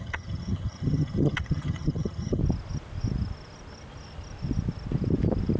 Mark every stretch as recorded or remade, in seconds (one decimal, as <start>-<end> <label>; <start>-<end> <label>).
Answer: 0.0-2.4 remade; 2.4-5.6 recorded